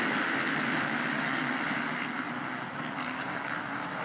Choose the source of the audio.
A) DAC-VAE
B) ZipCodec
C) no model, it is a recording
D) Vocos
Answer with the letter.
C